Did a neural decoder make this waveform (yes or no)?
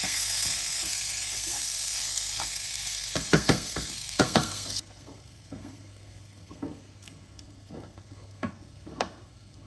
yes